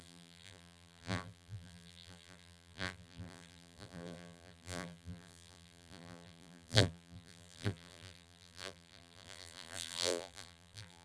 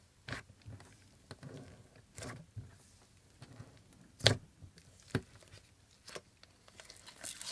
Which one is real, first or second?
second